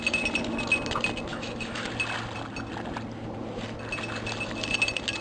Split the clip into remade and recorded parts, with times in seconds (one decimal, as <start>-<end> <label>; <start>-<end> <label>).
0.0-1.3 recorded; 1.3-1.9 remade; 1.9-5.2 recorded